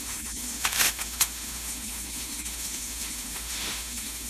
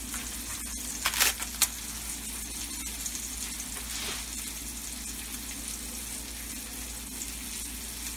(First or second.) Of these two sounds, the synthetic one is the first